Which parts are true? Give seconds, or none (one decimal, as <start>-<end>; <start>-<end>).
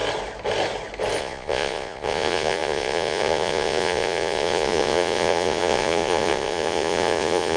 0.0-1.2